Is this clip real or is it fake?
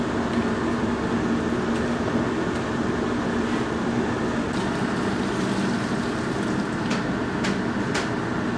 real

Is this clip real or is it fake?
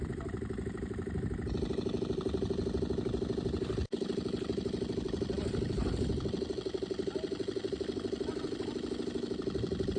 real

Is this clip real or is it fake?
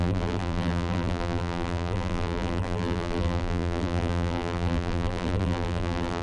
fake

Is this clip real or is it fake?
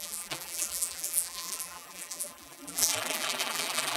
fake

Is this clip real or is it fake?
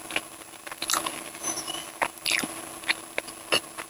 real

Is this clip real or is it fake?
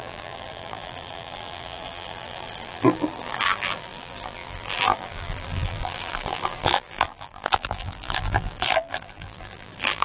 fake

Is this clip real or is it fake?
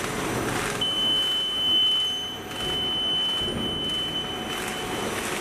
real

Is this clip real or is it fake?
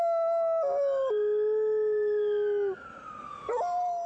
real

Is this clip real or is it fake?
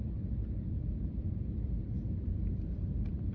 fake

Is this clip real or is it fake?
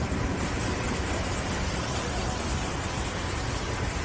real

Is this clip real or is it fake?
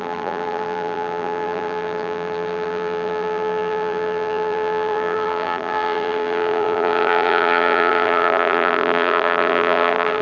fake